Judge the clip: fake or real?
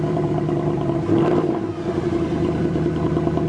fake